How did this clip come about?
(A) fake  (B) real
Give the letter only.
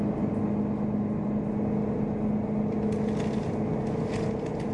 B